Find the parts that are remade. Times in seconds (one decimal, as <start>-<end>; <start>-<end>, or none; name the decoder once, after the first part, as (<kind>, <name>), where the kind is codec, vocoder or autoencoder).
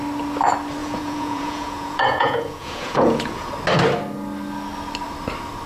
0.8-3.5 (vocoder, Vocos)